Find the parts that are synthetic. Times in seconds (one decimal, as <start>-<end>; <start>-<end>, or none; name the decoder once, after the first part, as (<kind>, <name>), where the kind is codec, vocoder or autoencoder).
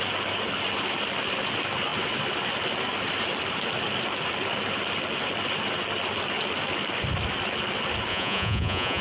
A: 8.1-9.0 (vocoder, Vocos)